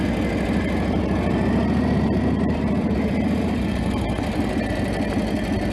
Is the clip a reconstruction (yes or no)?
no